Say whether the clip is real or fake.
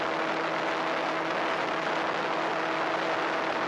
real